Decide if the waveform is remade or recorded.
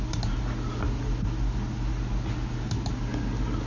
recorded